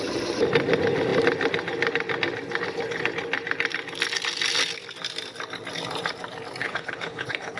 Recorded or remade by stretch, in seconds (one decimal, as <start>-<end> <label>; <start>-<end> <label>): 0.0-6.6 recorded; 6.6-7.6 remade